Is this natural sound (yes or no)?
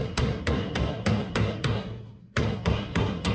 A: no